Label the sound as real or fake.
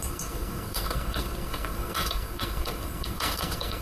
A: fake